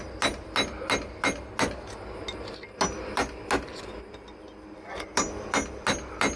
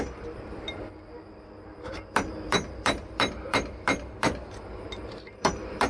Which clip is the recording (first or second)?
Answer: first